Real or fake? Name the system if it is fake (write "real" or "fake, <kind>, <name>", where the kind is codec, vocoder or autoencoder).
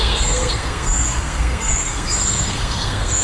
fake, codec, SNAC